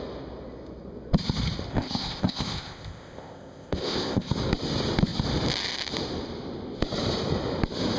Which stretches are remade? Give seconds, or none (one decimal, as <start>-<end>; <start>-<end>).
1.7-4.3